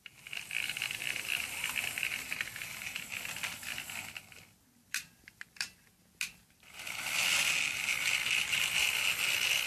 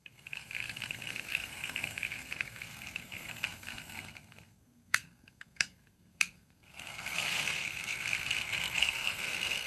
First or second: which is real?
first